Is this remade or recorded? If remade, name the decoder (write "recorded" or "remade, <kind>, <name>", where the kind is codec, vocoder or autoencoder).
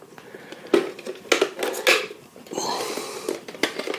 recorded